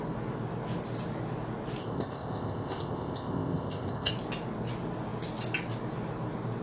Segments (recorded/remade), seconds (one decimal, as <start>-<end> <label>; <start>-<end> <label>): 0.0-1.8 recorded; 1.8-4.1 remade; 4.1-6.6 recorded